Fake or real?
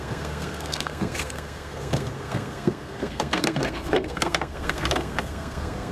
fake